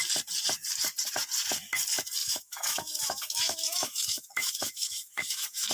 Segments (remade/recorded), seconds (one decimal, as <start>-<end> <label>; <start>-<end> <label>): 0.0-2.2 recorded; 2.2-5.7 remade